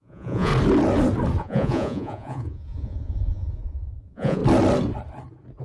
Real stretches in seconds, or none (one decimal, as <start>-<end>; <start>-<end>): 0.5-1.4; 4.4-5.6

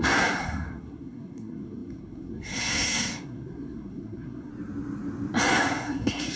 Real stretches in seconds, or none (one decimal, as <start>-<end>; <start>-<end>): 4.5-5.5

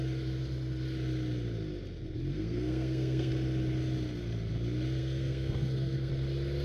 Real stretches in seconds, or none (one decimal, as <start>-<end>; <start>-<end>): 0.0-2.3; 3.3-5.0; 6.1-6.6

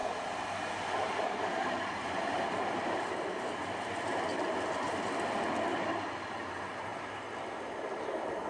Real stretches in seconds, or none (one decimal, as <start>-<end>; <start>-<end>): 0.0-8.5

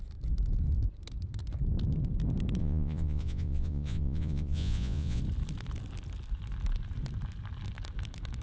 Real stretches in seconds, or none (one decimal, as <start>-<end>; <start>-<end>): 0.0-2.6; 5.2-8.4

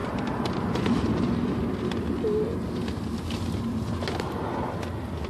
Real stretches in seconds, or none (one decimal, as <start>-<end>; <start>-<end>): 1.1-5.3